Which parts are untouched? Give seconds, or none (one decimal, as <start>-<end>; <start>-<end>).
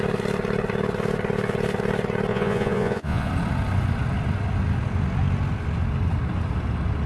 0.0-2.3; 3.3-7.1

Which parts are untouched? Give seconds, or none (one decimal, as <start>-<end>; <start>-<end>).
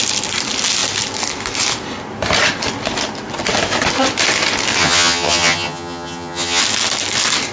0.0-4.8; 6.6-7.5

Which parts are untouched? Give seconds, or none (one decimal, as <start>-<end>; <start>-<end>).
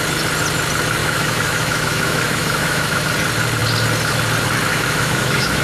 0.0-1.0; 3.0-4.7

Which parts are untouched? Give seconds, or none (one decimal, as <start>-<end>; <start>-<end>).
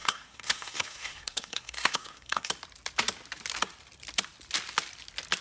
2.5-5.4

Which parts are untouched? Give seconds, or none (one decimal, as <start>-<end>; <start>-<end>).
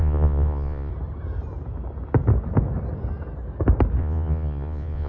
0.9-4.0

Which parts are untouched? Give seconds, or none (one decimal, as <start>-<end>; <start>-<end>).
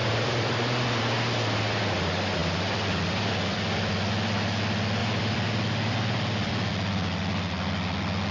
1.0-2.4; 4.1-5.0; 6.7-8.3